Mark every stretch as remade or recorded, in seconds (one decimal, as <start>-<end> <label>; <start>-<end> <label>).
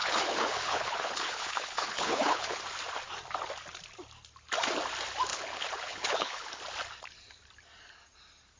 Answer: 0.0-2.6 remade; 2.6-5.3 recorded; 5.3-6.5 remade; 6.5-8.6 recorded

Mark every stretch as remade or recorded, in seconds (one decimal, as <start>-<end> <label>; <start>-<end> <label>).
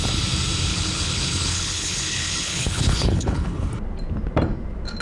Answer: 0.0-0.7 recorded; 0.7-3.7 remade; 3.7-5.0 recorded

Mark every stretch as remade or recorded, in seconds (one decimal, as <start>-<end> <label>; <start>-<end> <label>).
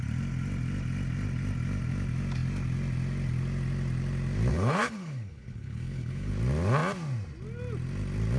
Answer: 0.0-4.5 recorded; 4.5-6.3 remade; 6.3-8.4 recorded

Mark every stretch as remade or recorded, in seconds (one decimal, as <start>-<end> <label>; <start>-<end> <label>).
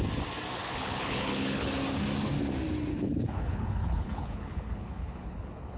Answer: 0.0-0.6 recorded; 0.6-1.7 remade; 1.7-2.9 recorded; 2.9-5.8 remade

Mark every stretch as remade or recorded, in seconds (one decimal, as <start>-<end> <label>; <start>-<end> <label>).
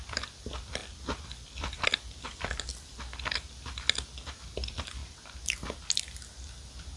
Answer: 0.0-7.0 recorded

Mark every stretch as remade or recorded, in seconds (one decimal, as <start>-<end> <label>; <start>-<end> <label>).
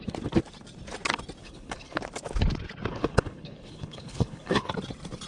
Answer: 0.0-1.4 recorded; 1.4-2.0 remade; 2.0-2.9 recorded; 2.9-4.7 remade; 4.7-5.3 recorded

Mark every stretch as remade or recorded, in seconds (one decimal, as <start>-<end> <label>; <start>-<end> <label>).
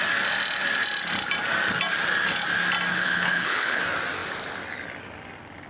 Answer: 0.0-2.9 recorded; 2.9-3.8 remade; 3.8-5.7 recorded